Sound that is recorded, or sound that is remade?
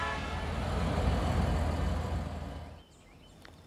recorded